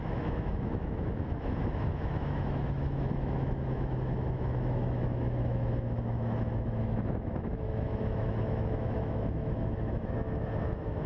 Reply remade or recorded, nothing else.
remade